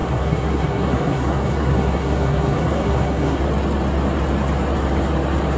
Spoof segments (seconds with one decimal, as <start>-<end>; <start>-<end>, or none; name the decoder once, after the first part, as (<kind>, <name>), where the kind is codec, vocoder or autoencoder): 0.0-3.4 (codec, SNAC)